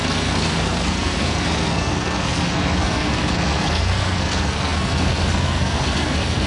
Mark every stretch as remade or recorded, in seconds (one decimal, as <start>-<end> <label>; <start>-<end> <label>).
0.0-6.5 remade